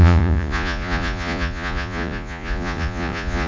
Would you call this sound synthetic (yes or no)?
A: yes